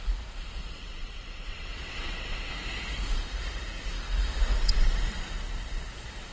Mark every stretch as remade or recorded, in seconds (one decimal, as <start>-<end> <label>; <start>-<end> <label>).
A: 0.0-0.6 recorded; 0.6-2.5 remade; 2.5-4.5 recorded; 4.5-5.2 remade; 5.2-6.3 recorded